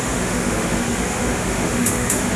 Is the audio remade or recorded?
remade